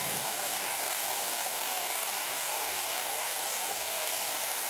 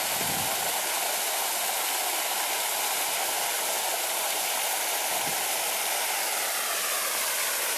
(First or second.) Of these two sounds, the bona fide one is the second